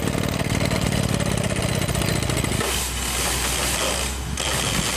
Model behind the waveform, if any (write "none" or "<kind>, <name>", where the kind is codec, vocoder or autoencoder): none